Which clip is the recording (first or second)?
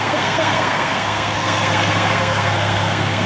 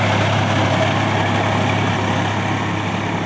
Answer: second